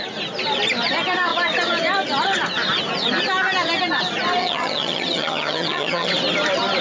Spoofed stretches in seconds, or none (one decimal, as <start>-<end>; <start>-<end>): 4.4-6.1